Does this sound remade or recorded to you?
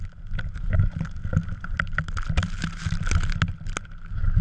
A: recorded